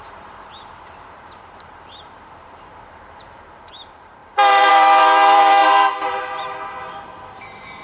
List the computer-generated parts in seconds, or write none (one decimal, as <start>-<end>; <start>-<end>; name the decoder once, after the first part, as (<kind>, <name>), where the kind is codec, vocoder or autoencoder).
0.0-7.8 (vocoder, BigVGAN v2)